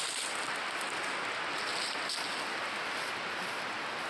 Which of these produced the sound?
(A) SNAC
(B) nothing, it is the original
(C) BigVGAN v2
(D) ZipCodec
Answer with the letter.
B